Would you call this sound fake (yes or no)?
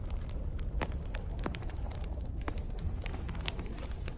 yes